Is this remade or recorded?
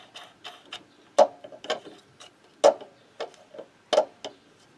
recorded